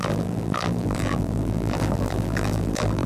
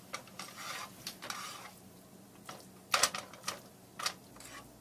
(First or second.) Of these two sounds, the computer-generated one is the first